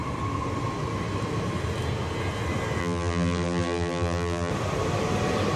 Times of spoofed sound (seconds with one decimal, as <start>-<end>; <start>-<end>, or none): 2.8-4.5